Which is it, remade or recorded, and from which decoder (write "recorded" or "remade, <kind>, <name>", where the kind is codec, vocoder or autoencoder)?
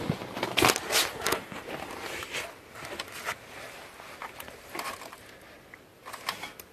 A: recorded